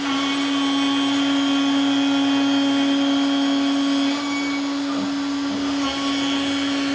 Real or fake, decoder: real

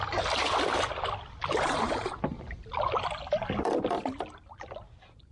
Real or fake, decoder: real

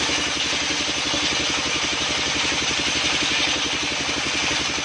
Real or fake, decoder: real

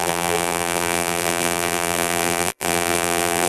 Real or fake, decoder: fake, vocoder, BigVGAN v2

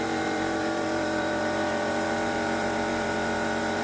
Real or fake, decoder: fake, vocoder, BigVGAN v2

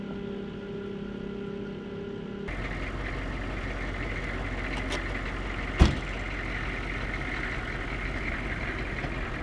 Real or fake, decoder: real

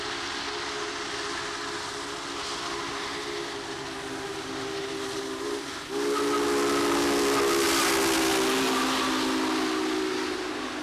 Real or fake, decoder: real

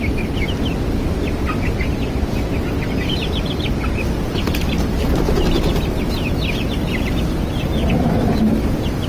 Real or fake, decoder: real